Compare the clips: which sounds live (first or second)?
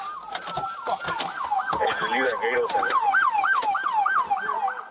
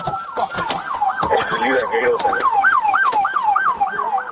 first